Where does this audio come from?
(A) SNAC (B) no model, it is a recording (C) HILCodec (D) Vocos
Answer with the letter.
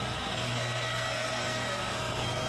A